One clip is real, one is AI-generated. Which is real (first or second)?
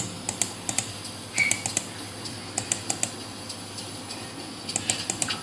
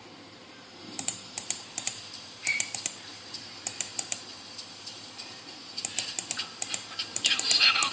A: first